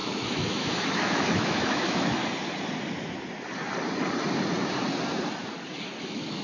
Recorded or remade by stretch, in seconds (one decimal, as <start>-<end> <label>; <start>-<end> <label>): 0.0-2.2 remade; 2.2-6.0 recorded; 6.0-6.4 remade